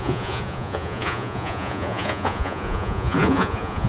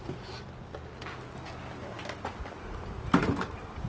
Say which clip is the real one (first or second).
second